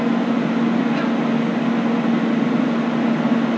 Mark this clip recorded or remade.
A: recorded